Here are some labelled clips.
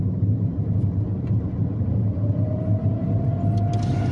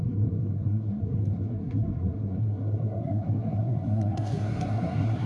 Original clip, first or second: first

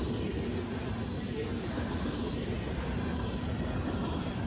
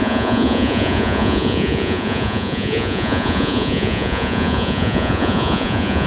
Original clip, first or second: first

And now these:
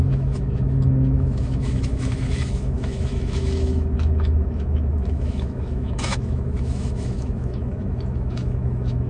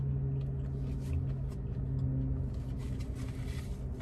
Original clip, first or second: second